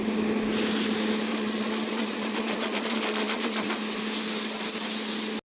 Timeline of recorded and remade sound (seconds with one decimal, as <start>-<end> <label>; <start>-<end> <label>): 0.0-1.3 recorded; 1.3-3.8 remade; 3.8-5.5 recorded